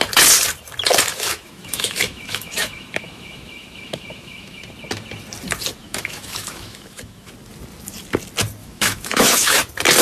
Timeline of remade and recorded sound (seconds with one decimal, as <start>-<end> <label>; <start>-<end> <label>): 0.0-1.1 recorded; 1.1-4.6 remade; 4.6-5.8 recorded; 5.8-7.3 remade; 7.3-8.6 recorded; 8.6-9.6 remade; 9.6-10.0 recorded